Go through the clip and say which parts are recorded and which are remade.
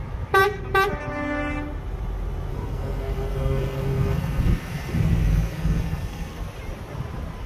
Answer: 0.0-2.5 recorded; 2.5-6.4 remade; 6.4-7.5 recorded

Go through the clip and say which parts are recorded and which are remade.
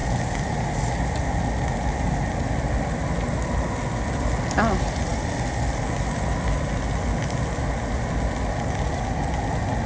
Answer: 0.0-9.9 recorded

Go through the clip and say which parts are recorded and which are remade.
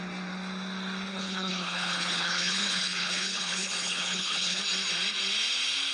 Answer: 0.0-1.1 recorded; 1.1-4.6 remade; 4.6-5.9 recorded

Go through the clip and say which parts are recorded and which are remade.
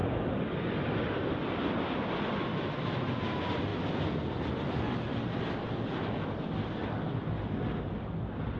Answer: 0.0-2.5 recorded; 2.5-3.1 remade; 3.1-8.6 recorded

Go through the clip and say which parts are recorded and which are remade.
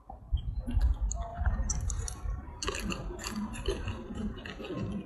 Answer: 0.0-1.3 recorded; 1.3-4.4 remade; 4.4-5.1 recorded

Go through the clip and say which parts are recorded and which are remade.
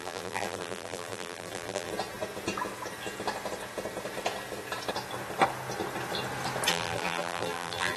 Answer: 0.0-1.9 remade; 1.9-6.7 recorded; 6.7-8.0 remade